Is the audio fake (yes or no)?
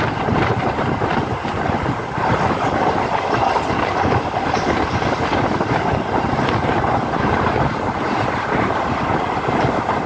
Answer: yes